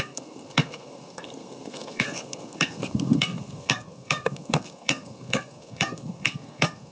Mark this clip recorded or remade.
remade